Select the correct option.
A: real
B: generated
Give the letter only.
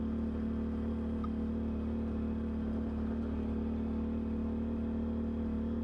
A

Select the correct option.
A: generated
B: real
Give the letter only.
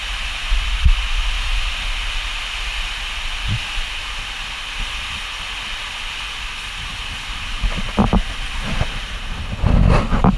B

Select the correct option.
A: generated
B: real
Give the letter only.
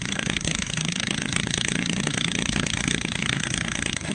A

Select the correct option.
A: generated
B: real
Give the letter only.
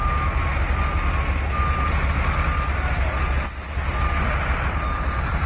B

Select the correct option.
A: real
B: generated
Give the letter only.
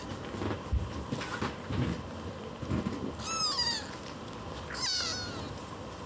A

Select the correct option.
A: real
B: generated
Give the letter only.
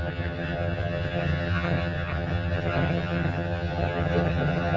B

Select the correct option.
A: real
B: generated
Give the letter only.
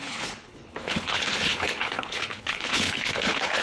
B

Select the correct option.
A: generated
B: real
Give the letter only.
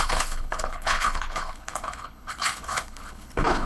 A